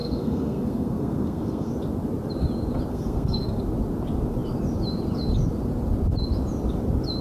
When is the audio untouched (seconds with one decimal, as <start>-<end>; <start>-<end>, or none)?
1.7-2.9; 3.6-7.2